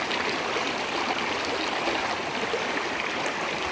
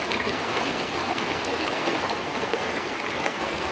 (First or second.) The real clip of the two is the first